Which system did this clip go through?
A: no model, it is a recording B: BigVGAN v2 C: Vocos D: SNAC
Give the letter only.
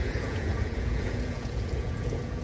C